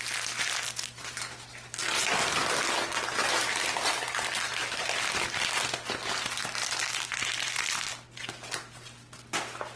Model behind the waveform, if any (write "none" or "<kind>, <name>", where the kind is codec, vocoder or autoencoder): none